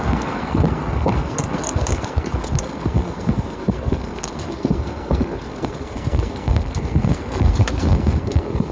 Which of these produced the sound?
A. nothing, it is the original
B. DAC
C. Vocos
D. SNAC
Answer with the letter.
D